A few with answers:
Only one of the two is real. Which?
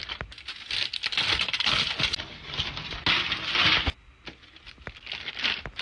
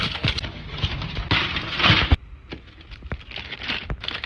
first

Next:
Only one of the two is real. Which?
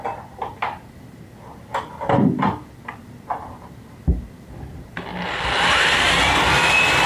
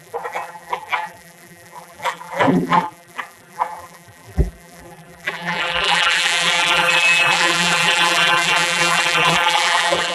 first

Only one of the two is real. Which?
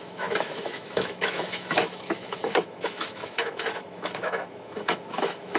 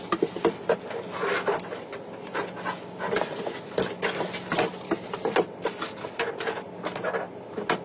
second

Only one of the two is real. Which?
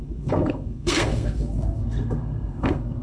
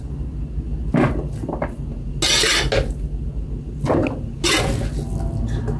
second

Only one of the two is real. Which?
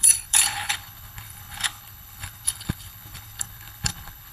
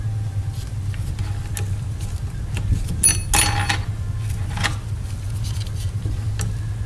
second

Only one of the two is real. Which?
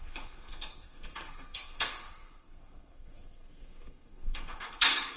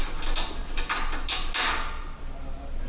second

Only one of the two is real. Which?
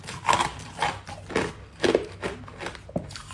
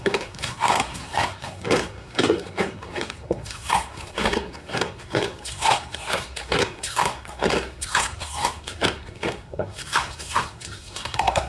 first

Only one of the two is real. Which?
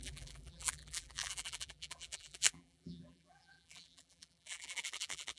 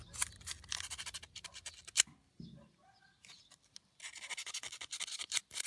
second